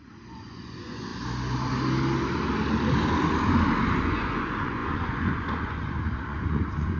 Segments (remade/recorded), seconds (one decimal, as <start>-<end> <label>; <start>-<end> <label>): 0.0-1.1 remade; 1.1-4.0 recorded; 4.0-7.0 remade